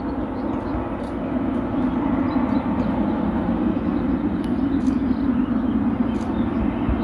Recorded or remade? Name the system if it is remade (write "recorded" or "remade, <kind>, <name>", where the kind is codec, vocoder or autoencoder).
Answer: recorded